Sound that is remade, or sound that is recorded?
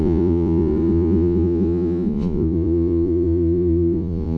remade